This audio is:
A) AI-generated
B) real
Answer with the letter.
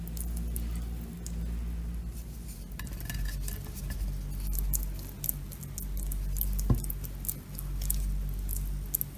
B